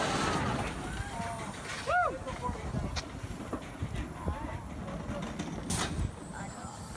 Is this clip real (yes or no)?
yes